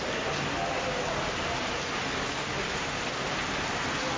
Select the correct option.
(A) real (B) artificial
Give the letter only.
A